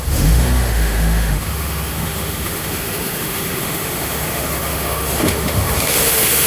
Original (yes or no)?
no